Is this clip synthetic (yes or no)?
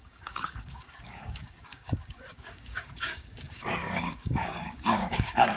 yes